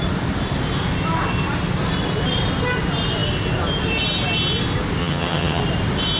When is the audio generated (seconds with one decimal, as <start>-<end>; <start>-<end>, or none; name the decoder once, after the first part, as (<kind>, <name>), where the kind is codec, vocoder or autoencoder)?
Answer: 5.0-5.6 (vocoder, HiFi-GAN)